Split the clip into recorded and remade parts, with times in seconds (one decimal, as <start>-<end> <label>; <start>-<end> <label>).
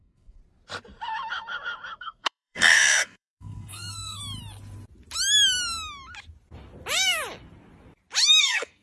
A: 0.0-0.4 remade; 0.4-2.0 recorded; 2.0-4.2 remade; 4.2-8.4 recorded; 8.4-8.8 remade